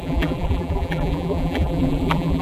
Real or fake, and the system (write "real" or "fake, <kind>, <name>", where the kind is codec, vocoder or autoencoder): fake, vocoder, BigVGAN v2